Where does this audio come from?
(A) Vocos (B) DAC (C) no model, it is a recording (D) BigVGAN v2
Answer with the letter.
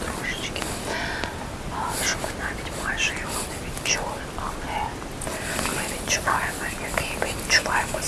C